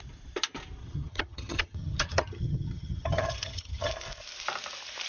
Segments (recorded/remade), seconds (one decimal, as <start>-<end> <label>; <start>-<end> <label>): 0.0-0.8 recorded; 0.8-3.9 remade; 3.9-5.1 recorded